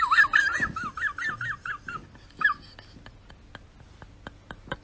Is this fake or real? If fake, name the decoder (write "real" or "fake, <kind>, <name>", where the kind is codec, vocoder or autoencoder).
real